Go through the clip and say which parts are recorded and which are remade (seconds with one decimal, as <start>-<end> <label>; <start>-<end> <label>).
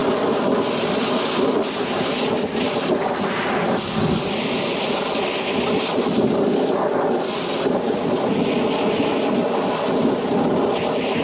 0.0-11.2 recorded